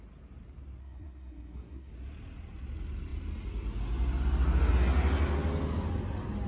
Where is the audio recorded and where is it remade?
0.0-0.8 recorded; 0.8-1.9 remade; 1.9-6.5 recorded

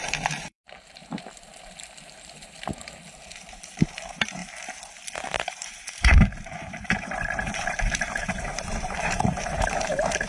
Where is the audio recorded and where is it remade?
0.0-4.4 remade; 4.4-5.4 recorded; 5.4-10.3 remade

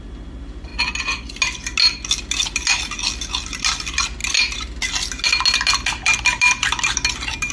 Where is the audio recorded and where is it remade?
0.0-7.5 recorded

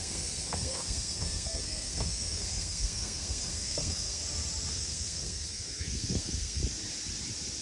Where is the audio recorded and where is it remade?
0.0-4.2 remade; 4.2-4.7 recorded; 4.7-6.6 remade; 6.6-7.6 recorded

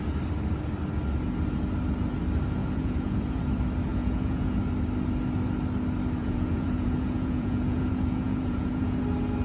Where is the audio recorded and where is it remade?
0.0-2.6 recorded; 2.6-3.4 remade; 3.4-3.9 recorded; 3.9-4.6 remade; 4.6-6.2 recorded; 6.2-9.0 remade; 9.0-9.4 recorded